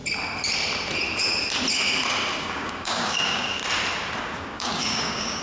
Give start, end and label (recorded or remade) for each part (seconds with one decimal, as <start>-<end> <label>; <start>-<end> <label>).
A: 0.0-2.4 recorded; 2.4-3.6 remade; 3.6-4.2 recorded; 4.2-5.4 remade